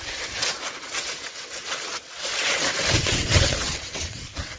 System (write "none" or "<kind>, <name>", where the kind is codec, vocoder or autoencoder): vocoder, WaveNeXt